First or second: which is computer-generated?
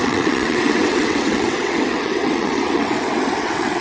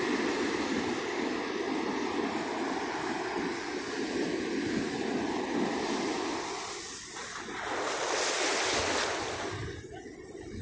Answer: first